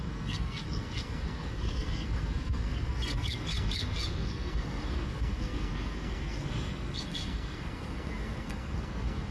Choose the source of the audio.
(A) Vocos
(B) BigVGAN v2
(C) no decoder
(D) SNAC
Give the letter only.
D